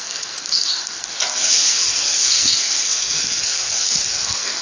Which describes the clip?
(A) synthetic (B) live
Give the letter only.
A